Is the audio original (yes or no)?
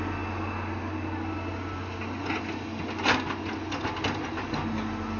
yes